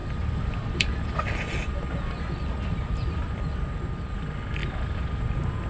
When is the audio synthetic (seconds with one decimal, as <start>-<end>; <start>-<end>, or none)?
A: 0.0-3.4; 4.6-5.2